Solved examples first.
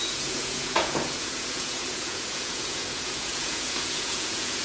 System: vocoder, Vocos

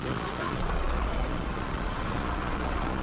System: vocoder, Vocos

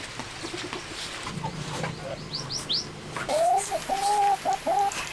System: none